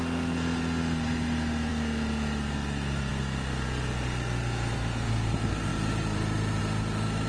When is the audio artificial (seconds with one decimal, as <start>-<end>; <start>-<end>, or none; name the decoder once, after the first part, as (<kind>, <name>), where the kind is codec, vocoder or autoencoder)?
none